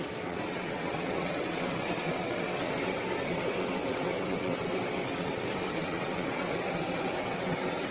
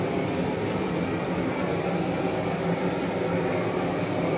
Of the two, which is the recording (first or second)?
second